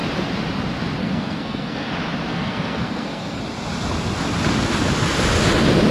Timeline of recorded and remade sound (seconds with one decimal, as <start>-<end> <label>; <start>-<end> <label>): 0.0-1.0 recorded; 1.0-1.9 remade; 1.9-2.3 recorded; 2.3-3.4 remade; 3.4-5.9 recorded